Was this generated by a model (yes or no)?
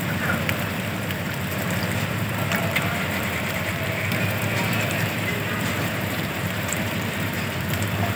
yes